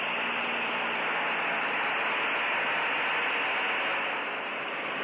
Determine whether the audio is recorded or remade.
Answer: recorded